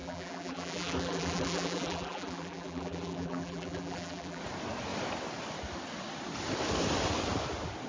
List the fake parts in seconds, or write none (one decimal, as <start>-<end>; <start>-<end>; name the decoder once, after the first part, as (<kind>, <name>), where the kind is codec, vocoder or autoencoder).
0.0-4.4 (vocoder, BigVGAN v2)